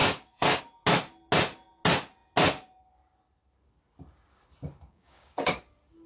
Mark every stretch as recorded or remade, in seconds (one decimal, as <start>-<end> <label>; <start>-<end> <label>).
0.0-0.6 remade; 0.6-4.9 recorded; 4.9-5.6 remade; 5.6-6.1 recorded